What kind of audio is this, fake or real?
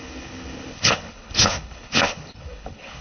fake